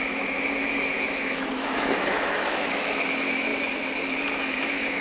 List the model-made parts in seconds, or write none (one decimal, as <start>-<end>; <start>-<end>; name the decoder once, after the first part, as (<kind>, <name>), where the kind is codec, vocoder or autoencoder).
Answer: 0.0-5.0 (autoencoder, DAC-VAE)